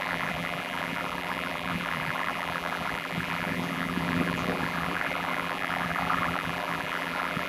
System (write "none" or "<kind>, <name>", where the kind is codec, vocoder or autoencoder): vocoder, BigVGAN v2